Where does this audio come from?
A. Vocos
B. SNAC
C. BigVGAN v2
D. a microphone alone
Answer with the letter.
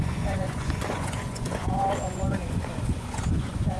A